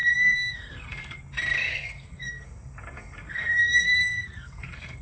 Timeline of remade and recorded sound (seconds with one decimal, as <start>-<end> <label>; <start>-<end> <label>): 0.0-1.2 remade; 1.2-1.7 recorded; 1.7-5.0 remade

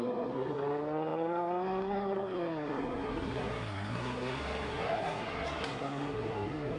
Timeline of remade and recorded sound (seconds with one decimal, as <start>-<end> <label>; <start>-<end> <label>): 0.0-6.8 remade

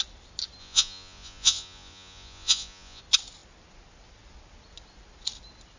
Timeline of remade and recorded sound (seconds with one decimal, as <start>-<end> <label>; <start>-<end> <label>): 0.0-0.6 recorded; 0.6-3.0 remade; 3.0-5.8 recorded

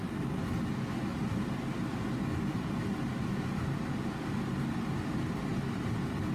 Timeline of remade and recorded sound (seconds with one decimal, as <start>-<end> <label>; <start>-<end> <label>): 0.0-6.3 recorded

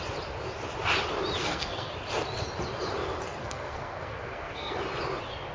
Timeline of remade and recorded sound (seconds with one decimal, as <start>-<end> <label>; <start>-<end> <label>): 0.0-1.4 recorded; 1.4-1.9 remade; 1.9-3.4 recorded; 3.4-4.8 remade; 4.8-5.5 recorded

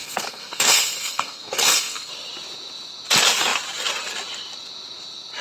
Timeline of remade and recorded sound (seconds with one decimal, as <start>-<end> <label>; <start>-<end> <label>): 0.0-2.1 remade; 2.1-5.4 recorded

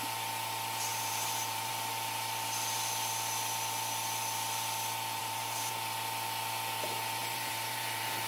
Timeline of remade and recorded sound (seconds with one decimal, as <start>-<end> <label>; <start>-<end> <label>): 0.0-0.9 recorded; 0.9-1.7 remade; 1.7-5.2 recorded; 5.2-5.7 remade; 5.7-7.2 recorded; 7.2-8.3 remade

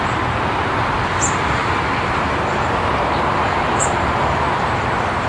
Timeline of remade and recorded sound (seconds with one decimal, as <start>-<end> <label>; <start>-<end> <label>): 0.0-1.6 recorded; 1.6-4.8 remade; 4.8-5.3 recorded